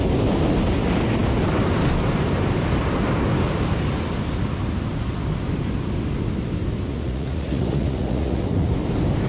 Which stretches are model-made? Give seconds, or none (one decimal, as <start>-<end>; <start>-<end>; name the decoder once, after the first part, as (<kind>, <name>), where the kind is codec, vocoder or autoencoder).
6.9-8.7 (vocoder, Vocos)